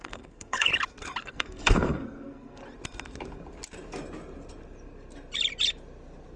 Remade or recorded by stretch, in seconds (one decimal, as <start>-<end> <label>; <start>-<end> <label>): 0.0-0.7 remade; 0.7-1.2 recorded; 1.2-2.6 remade; 2.6-6.4 recorded